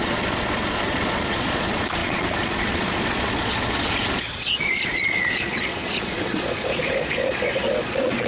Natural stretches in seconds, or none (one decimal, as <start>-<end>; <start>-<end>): none